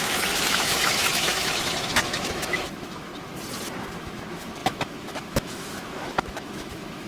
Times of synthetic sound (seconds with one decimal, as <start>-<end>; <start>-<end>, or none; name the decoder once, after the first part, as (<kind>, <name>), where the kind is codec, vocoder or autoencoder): 0.0-3.1 (autoencoder, DAC-VAE); 4.0-7.1